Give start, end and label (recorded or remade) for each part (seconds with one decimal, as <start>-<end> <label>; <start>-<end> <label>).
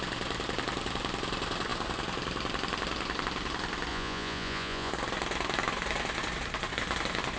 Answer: 0.0-3.9 recorded; 3.9-4.9 remade; 4.9-7.4 recorded